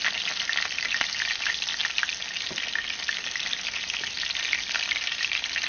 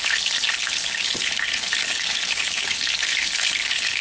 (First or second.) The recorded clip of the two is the first